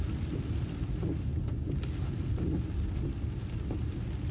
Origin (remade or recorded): recorded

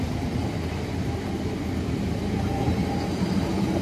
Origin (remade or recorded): recorded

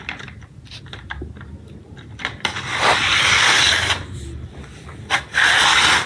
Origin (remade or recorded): recorded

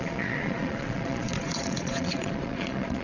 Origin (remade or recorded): remade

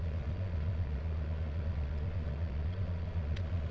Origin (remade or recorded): remade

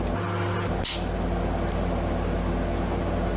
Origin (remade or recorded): recorded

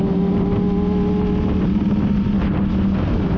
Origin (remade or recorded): recorded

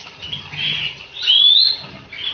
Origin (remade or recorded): recorded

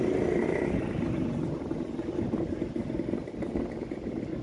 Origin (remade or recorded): recorded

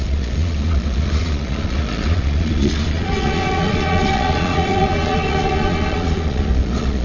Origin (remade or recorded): remade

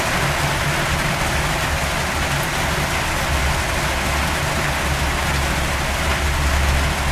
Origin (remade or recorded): recorded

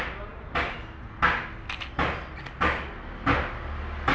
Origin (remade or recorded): recorded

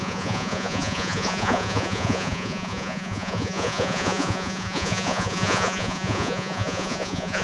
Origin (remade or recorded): remade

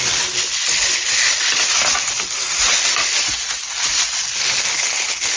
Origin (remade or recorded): recorded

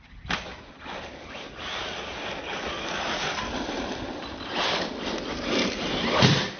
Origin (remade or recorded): recorded